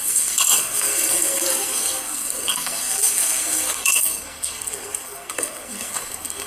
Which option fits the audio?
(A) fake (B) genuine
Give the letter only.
A